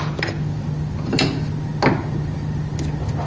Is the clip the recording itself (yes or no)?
yes